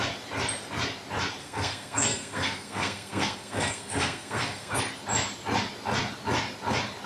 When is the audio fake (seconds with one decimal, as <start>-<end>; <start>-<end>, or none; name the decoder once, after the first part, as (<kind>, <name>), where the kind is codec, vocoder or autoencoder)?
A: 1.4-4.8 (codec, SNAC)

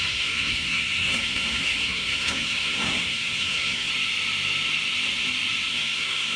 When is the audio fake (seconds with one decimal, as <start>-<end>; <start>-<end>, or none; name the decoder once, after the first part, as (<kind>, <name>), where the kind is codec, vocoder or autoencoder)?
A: 0.0-3.9 (codec, SNAC); 5.7-6.4

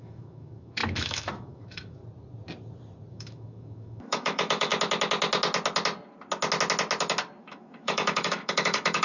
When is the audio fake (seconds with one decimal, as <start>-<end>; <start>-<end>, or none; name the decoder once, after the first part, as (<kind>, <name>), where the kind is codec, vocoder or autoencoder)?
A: 0.0-2.0 (autoencoder, DAC-VAE); 3.1-4.7; 7.4-9.0